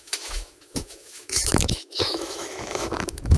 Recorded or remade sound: remade